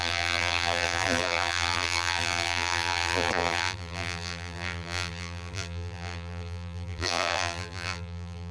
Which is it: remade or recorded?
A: remade